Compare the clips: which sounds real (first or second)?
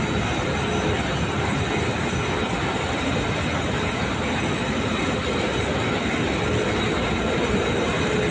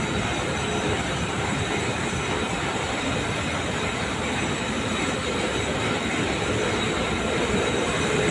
first